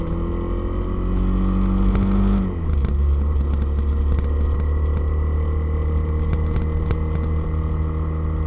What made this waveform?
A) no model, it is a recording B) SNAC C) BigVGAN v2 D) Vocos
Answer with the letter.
A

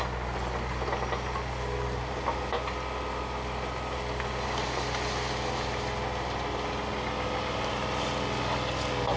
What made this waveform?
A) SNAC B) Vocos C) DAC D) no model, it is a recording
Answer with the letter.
D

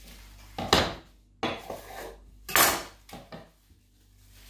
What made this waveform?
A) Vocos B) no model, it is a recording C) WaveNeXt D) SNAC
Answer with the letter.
B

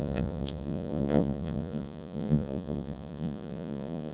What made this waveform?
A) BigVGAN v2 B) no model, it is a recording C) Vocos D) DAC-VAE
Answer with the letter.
C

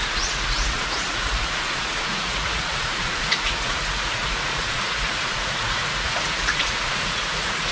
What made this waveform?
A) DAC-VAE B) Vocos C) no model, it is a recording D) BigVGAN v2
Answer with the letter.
B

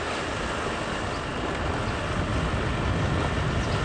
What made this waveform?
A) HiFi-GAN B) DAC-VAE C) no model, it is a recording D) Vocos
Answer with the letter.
C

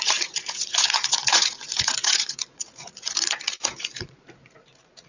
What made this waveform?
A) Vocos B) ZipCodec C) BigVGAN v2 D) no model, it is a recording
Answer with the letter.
A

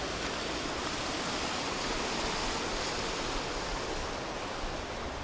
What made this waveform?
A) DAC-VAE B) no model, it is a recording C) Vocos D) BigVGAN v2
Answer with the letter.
B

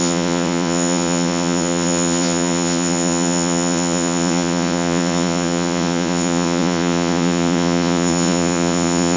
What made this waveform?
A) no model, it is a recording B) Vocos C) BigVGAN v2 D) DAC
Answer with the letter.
B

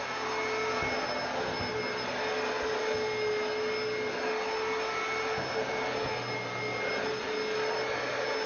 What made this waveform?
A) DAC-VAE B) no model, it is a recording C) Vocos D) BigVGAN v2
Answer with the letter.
B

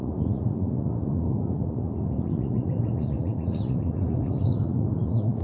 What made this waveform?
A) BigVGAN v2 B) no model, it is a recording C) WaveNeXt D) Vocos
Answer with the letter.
D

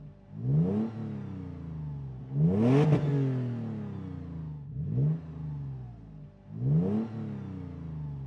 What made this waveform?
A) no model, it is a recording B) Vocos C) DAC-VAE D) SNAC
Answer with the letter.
A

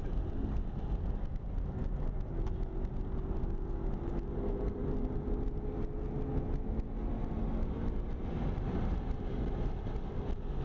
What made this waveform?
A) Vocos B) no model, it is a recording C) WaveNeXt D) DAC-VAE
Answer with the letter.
B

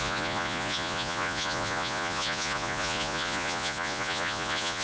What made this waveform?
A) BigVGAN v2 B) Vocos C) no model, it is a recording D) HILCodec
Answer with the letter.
B